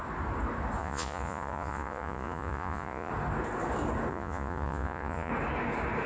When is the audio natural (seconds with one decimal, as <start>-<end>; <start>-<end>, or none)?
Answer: 0.0-0.8; 3.1-4.1; 5.3-6.1